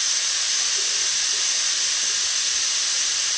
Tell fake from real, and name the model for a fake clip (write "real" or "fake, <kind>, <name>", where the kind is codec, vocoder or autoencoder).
real